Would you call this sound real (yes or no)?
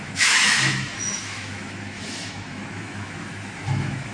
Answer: no